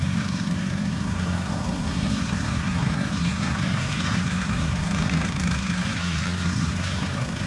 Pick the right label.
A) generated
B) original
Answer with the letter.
A